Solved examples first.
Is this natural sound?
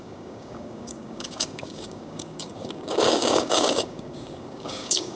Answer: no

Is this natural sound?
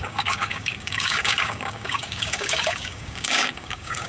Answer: no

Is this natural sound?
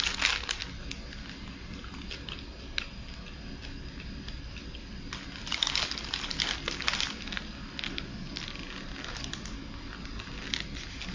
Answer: yes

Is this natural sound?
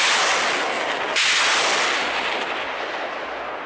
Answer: yes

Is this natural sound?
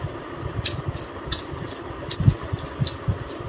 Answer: yes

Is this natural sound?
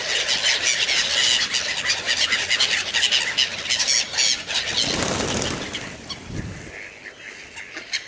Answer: yes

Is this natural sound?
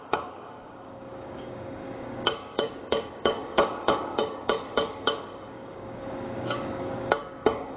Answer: no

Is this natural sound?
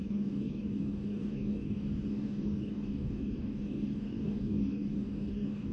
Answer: no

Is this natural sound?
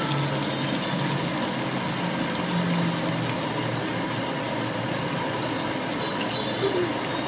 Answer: yes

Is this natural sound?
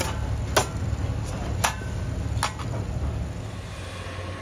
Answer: yes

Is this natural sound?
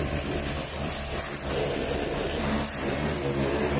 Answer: yes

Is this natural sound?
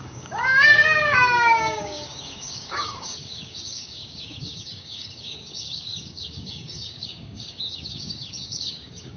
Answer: no